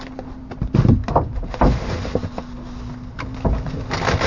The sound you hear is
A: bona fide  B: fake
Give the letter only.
A